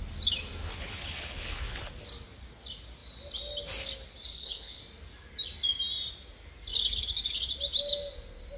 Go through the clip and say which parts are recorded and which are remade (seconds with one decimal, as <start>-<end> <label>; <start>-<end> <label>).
0.0-0.6 recorded; 0.6-1.9 remade; 1.9-4.3 recorded; 4.3-4.8 remade; 4.8-8.6 recorded